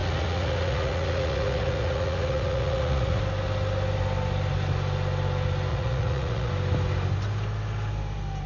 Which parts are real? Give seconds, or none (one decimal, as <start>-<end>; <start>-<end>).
3.2-5.7; 6.5-8.5

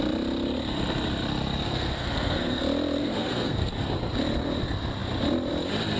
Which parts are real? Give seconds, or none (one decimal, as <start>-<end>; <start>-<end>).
0.0-1.7; 2.6-3.0; 3.7-6.0

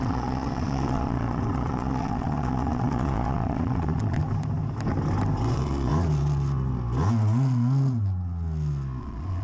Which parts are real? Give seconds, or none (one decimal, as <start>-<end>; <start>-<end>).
4.2-5.5; 5.9-9.0